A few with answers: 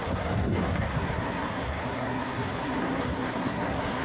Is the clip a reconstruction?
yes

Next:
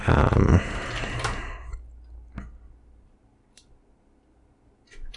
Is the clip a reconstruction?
no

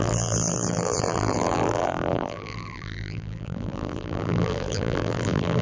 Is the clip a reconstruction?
yes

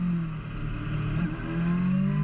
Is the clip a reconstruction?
no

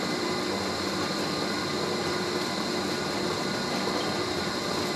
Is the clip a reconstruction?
no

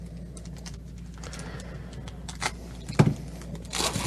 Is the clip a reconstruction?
no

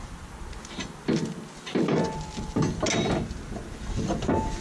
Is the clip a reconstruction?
no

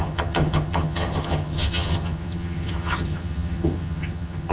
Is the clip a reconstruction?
yes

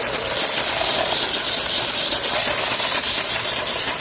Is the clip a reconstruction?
no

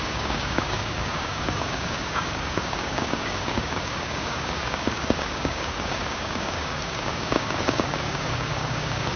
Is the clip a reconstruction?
yes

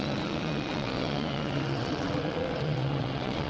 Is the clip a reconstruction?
yes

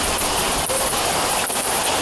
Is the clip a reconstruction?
no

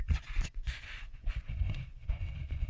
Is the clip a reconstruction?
yes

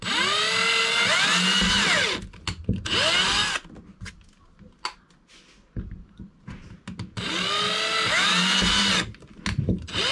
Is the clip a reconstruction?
no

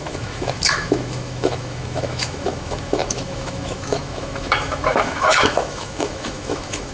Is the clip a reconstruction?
yes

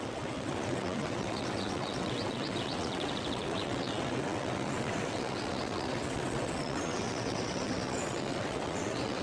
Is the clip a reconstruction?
yes